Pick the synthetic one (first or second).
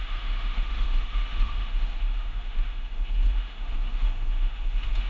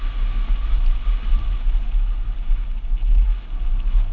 first